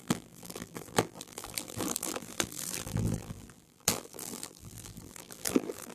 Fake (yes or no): yes